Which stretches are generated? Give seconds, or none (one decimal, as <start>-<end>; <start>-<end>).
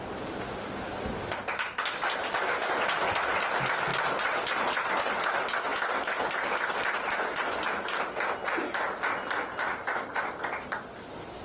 none